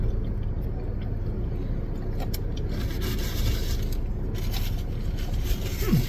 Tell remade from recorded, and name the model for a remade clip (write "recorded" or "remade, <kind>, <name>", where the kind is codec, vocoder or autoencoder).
recorded